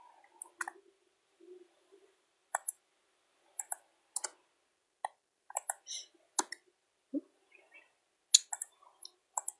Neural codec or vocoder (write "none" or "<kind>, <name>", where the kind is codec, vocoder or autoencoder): none